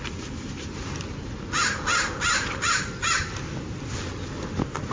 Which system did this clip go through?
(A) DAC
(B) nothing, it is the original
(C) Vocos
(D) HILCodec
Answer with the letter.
B